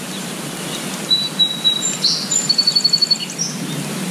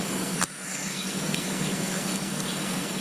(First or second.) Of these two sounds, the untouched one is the first